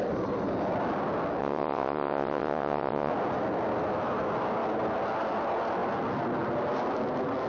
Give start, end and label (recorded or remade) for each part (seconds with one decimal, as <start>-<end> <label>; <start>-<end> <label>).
0.0-1.4 recorded; 1.4-3.1 remade; 3.1-7.5 recorded